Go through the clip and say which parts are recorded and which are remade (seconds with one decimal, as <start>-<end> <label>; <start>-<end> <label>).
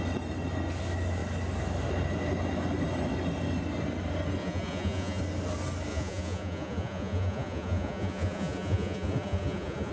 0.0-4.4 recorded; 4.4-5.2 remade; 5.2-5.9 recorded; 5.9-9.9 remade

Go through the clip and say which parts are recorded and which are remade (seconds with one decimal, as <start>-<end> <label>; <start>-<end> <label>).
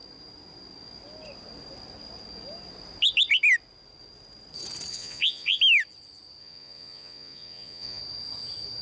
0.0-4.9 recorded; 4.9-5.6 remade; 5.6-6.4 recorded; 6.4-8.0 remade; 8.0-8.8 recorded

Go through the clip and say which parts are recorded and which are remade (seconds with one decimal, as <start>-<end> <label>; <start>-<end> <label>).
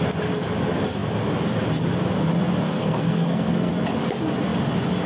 0.0-2.8 recorded; 2.8-3.7 remade; 3.7-5.1 recorded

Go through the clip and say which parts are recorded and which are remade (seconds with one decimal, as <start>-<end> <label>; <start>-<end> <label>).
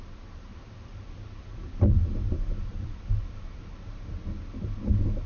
0.0-0.5 recorded; 0.5-3.4 remade; 3.4-5.3 recorded